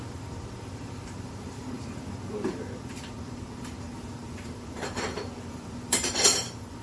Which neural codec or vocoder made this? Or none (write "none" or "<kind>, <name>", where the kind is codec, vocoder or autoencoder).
vocoder, BigVGAN v2